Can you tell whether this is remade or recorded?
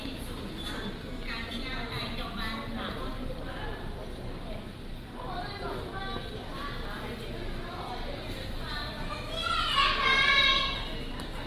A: recorded